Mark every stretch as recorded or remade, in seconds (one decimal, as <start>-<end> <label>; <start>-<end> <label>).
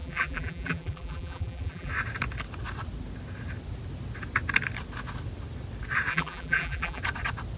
0.0-1.9 remade; 1.9-6.1 recorded; 6.1-7.0 remade; 7.0-7.6 recorded